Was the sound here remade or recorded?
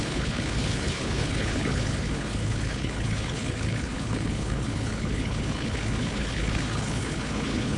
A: remade